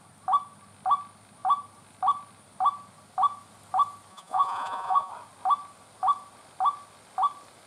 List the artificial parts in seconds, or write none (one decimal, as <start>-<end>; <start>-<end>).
4.1-5.1